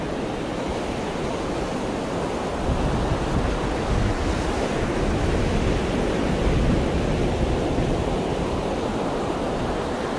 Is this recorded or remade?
recorded